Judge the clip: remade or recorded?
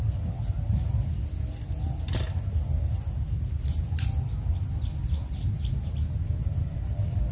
recorded